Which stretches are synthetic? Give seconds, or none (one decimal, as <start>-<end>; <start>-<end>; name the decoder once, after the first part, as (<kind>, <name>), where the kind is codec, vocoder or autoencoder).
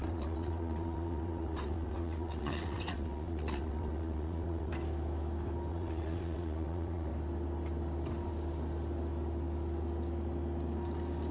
0.0-4.7 (vocoder, WaveNeXt); 5.7-7.1